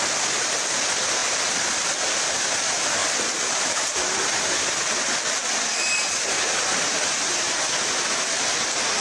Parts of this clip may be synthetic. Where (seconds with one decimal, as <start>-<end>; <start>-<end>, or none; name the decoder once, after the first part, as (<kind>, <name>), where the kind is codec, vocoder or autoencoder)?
3.0-4.0 (vocoder, BigVGAN v2)